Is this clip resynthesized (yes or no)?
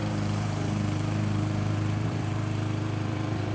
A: yes